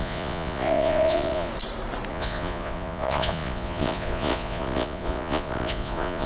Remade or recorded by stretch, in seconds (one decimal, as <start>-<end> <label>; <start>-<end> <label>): 0.0-1.5 remade; 1.5-2.1 recorded; 2.1-6.3 remade